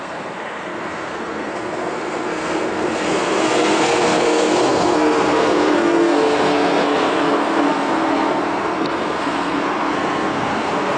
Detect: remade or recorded remade